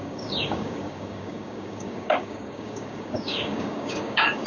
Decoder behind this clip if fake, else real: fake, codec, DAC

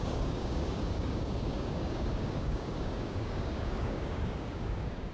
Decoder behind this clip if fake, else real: fake, codec, DAC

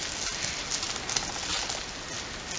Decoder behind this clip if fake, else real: real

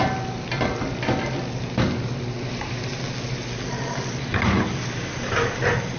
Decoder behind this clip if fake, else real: real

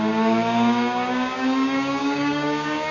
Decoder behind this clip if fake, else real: fake, codec, DAC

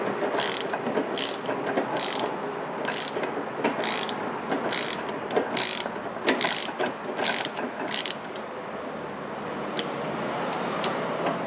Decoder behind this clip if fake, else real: real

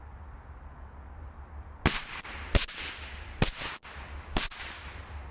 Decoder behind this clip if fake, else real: real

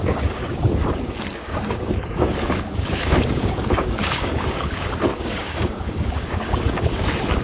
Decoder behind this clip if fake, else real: fake, codec, DAC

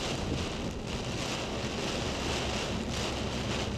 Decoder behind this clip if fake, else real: real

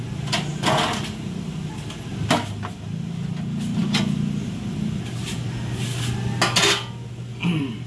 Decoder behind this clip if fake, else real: real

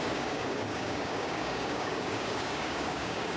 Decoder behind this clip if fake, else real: fake, codec, DAC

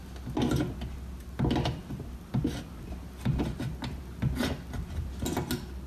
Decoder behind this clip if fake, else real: real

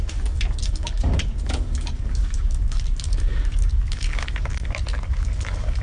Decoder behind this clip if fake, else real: fake, codec, DAC